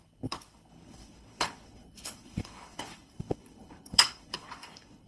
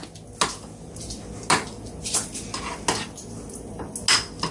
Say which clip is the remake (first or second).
first